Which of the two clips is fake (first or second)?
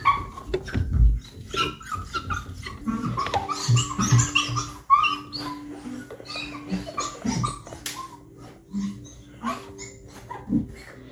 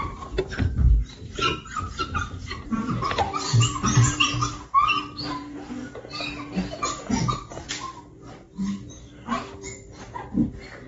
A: second